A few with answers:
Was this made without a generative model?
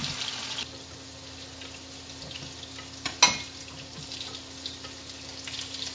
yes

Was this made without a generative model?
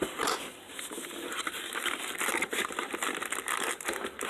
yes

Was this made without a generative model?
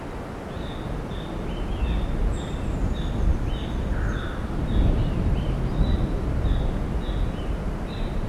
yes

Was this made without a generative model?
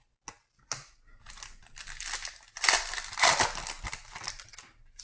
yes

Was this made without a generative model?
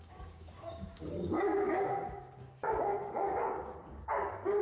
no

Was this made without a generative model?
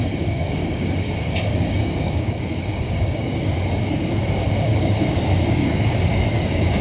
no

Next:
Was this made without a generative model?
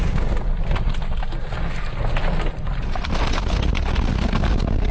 yes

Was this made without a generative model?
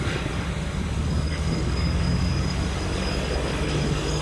no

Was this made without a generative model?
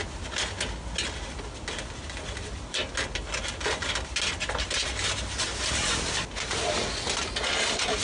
yes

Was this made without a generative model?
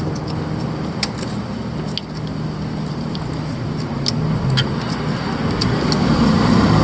yes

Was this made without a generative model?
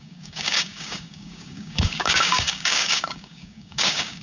no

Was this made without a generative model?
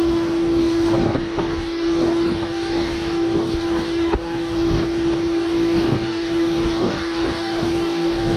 no